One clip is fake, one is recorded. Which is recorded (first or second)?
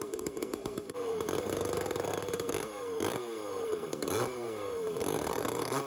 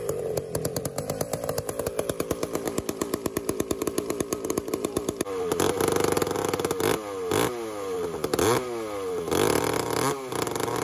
second